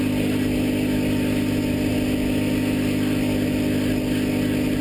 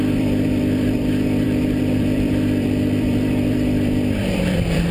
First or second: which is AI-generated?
second